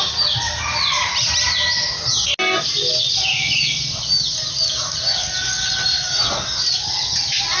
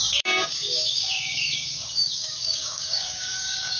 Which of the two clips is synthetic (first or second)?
second